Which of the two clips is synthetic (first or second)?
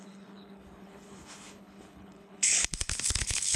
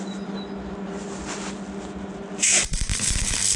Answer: first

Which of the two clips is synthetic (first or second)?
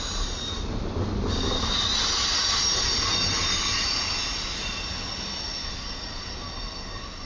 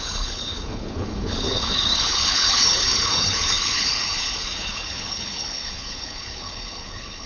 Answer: second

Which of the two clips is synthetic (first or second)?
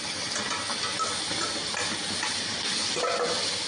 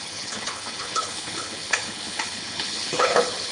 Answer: second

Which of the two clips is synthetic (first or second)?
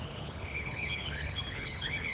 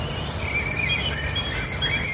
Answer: first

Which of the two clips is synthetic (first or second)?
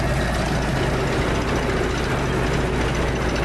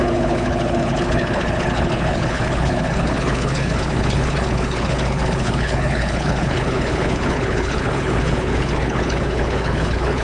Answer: second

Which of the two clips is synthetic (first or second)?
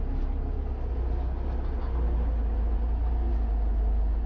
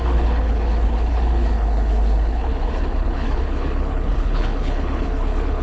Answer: second